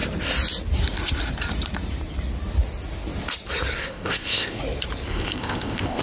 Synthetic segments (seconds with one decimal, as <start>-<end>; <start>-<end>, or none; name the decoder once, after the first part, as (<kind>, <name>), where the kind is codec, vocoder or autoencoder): 3.8-4.6 (codec, ZipCodec); 5.1-6.0